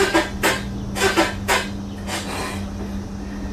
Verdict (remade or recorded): recorded